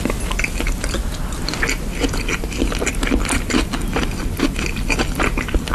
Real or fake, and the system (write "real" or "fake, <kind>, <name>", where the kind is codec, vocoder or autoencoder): real